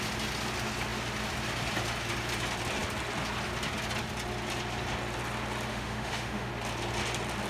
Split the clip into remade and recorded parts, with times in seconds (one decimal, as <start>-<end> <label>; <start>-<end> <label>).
0.0-5.7 recorded; 5.7-6.5 remade; 6.5-7.5 recorded